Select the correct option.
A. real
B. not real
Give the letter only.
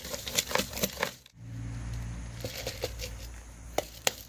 B